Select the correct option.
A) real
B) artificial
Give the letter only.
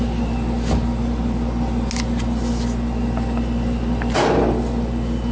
A